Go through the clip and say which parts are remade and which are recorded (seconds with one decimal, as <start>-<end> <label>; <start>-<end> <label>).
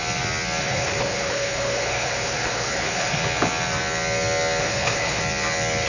0.0-0.6 recorded; 0.6-3.2 remade; 3.2-4.6 recorded; 4.6-5.2 remade; 5.2-5.9 recorded